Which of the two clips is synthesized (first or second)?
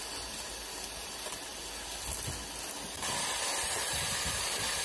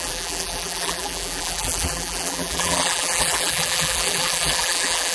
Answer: second